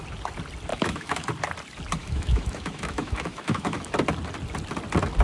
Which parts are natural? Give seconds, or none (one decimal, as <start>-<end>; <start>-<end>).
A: 0.0-0.7; 1.3-2.0; 3.9-5.2